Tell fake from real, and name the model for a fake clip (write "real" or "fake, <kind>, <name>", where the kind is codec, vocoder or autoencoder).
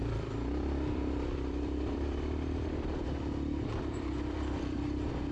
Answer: fake, vocoder, BigVGAN v2